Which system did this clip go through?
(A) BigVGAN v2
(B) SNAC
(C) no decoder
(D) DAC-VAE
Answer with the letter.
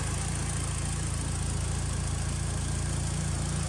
C